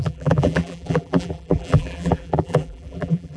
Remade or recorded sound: remade